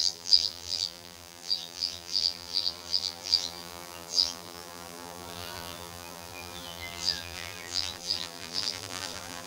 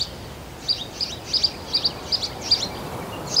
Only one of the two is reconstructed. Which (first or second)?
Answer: first